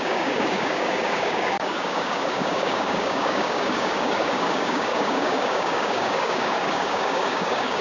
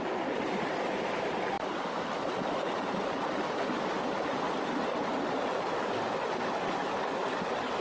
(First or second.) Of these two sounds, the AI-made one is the first